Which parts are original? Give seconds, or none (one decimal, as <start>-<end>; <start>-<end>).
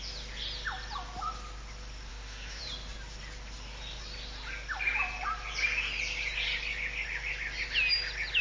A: 0.0-2.1; 2.6-8.4